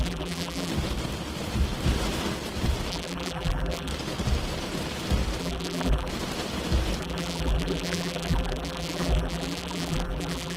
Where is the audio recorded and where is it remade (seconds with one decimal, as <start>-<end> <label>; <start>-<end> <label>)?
0.0-0.7 remade; 0.7-2.9 recorded; 2.9-3.9 remade; 3.9-5.4 recorded; 5.4-6.1 remade; 6.1-7.0 recorded; 7.0-10.6 remade